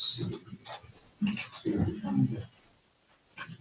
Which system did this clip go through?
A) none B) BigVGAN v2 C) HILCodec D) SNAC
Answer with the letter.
A